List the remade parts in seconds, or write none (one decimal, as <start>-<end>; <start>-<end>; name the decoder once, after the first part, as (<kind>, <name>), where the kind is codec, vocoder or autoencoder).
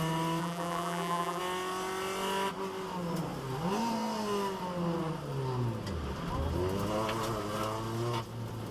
0.4-1.4 (vocoder, BigVGAN v2)